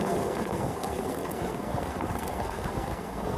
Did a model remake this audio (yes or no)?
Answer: yes